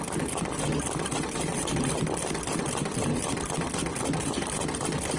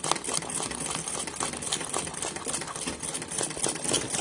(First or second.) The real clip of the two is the second